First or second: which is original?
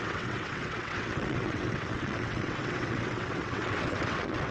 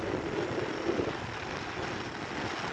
second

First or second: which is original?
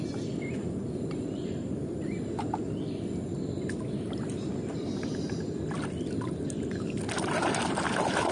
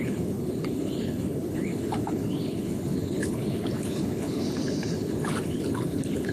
first